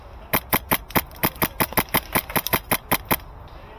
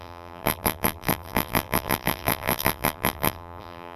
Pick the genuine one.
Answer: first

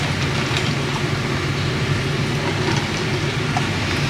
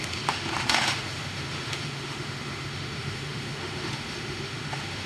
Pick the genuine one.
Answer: first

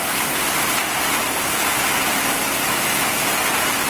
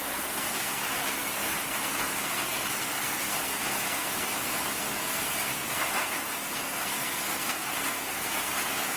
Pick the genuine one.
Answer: first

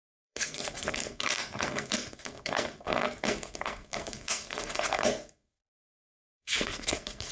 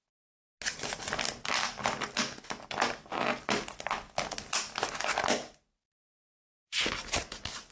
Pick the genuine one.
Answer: second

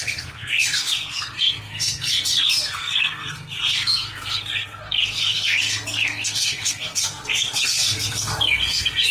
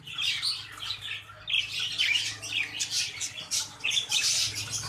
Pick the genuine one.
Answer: second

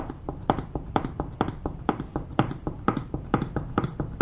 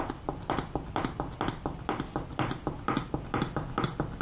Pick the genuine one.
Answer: second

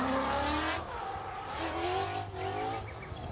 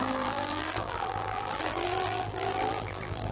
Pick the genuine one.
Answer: first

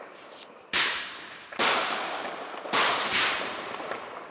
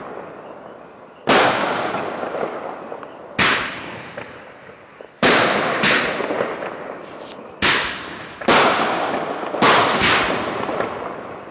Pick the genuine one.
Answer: second